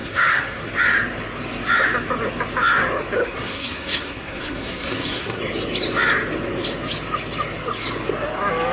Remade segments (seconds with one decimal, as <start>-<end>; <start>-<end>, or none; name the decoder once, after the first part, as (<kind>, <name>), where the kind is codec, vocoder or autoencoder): 0.0-0.7 (codec, SNAC); 3.2-5.4